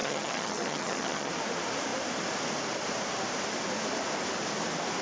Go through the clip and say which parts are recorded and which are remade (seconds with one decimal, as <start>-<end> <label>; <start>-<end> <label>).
0.0-1.3 remade; 1.3-5.0 recorded

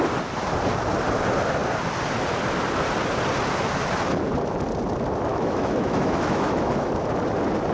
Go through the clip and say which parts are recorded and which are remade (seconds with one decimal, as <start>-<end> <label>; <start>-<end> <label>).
0.0-5.3 recorded; 5.3-6.9 remade; 6.9-7.7 recorded

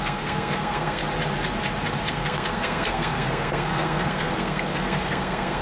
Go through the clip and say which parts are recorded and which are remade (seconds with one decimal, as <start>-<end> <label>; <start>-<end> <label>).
0.0-1.0 remade; 1.0-2.1 recorded; 2.1-5.6 remade

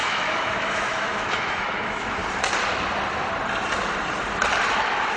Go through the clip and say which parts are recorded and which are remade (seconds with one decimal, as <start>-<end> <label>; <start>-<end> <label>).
0.0-2.2 remade; 2.2-4.7 recorded; 4.7-5.2 remade

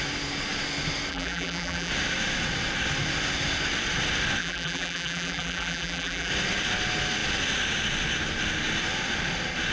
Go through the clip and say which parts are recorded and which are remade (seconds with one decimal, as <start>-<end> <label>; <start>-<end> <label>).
0.0-1.1 recorded; 1.1-1.9 remade; 1.9-4.4 recorded; 4.4-6.3 remade; 6.3-9.7 recorded

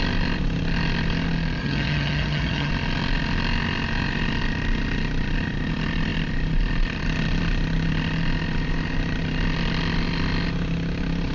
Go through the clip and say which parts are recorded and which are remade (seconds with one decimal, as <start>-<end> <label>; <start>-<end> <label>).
0.0-1.6 recorded; 1.6-2.7 remade; 2.7-11.3 recorded